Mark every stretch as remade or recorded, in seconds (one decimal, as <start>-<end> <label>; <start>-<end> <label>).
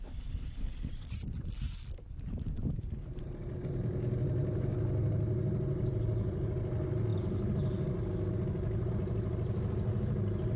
0.0-10.6 recorded